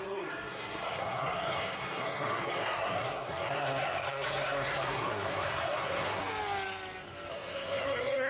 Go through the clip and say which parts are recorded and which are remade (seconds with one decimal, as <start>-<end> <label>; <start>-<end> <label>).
0.0-6.2 remade; 6.2-7.3 recorded; 7.3-8.3 remade